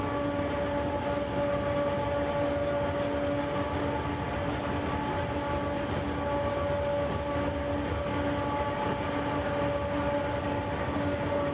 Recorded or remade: recorded